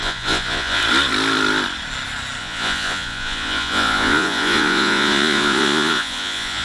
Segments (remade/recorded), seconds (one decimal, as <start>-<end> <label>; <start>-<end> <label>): 0.0-0.8 remade; 0.8-2.4 recorded; 2.4-6.6 remade